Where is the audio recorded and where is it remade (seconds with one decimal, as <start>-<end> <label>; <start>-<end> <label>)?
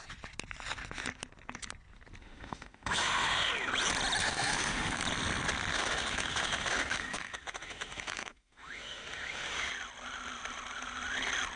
0.0-2.2 recorded; 2.2-3.5 remade; 3.5-4.2 recorded; 4.2-5.0 remade; 5.0-5.7 recorded; 5.7-9.7 remade; 9.7-11.6 recorded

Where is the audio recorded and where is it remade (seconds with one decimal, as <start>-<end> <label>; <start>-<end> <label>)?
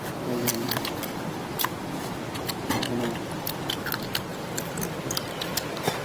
0.0-0.5 recorded; 0.5-2.1 remade; 2.1-4.3 recorded; 4.3-5.5 remade; 5.5-6.0 recorded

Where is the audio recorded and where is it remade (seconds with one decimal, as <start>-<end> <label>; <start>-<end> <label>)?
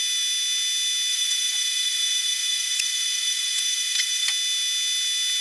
0.0-1.1 recorded; 1.1-4.3 remade; 4.3-5.4 recorded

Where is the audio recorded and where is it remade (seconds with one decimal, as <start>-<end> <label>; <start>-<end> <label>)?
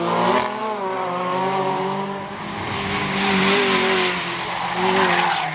0.0-0.6 recorded; 0.6-2.4 remade; 2.4-5.5 recorded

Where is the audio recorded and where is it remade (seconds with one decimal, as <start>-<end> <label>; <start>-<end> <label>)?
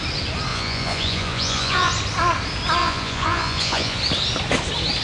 0.0-0.5 recorded; 0.5-1.9 remade; 1.9-2.8 recorded; 2.8-4.0 remade; 4.0-5.0 recorded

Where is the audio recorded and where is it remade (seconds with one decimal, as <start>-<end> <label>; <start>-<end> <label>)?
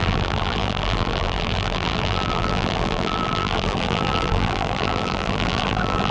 0.0-6.1 remade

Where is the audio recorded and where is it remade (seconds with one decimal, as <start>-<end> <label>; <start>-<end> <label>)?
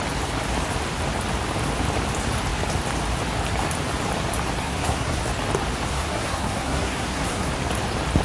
0.0-4.6 recorded; 4.6-5.2 remade; 5.2-5.9 recorded; 5.9-7.5 remade; 7.5-8.2 recorded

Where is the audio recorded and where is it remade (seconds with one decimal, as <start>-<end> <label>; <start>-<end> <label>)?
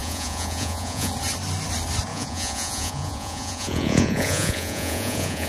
0.0-1.1 remade; 1.1-2.1 recorded; 2.1-5.5 remade